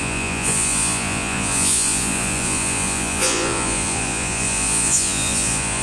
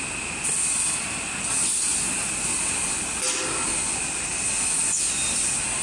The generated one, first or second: first